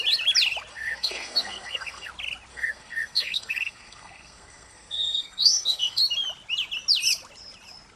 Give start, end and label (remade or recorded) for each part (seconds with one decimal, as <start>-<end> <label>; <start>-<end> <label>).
0.0-0.7 recorded; 0.7-2.1 remade; 2.1-2.5 recorded; 2.5-6.0 remade; 6.0-8.0 recorded